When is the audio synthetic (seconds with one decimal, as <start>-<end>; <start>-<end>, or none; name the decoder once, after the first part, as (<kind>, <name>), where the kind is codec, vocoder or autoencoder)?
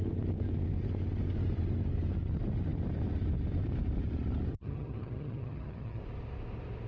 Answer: 4.5-6.0 (vocoder, HiFi-GAN)